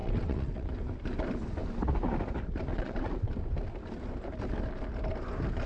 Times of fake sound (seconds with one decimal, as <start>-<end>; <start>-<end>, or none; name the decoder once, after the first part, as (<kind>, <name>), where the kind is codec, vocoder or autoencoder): 0.0-0.7 (vocoder, WaveNeXt); 2.7-3.3